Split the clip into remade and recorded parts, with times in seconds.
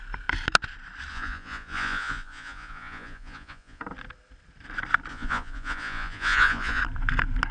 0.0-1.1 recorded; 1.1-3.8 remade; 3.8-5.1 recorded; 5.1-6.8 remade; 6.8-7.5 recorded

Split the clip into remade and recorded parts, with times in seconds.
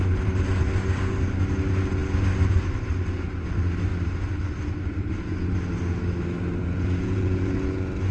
0.0-6.6 recorded; 6.6-8.1 remade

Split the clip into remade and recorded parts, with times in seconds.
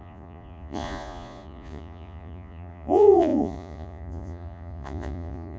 0.0-5.6 remade